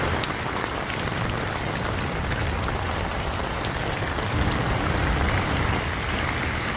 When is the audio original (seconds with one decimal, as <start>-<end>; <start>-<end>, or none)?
0.0-6.8

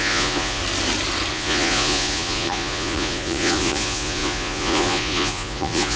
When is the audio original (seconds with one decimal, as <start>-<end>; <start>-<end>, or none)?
0.6-1.3

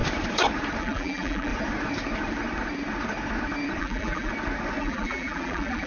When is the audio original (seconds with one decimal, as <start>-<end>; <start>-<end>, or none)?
0.0-0.8; 1.5-3.8; 4.3-4.8

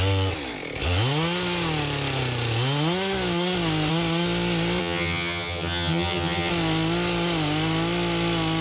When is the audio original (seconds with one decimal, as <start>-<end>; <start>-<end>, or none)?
0.0-4.8; 6.5-8.6

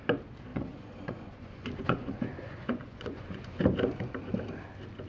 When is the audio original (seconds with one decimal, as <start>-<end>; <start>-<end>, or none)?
0.0-0.5; 3.6-5.1

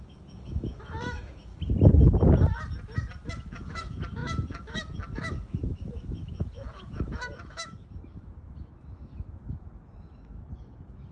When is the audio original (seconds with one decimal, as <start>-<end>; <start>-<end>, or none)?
1.5-3.3

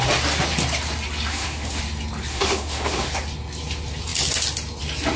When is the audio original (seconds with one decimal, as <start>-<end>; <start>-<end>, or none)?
0.0-1.3; 1.8-2.3; 3.1-5.2

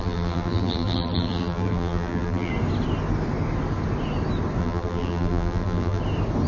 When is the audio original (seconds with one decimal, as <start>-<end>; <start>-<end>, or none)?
2.5-4.6; 6.0-6.5